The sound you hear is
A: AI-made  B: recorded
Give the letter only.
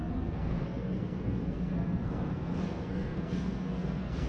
A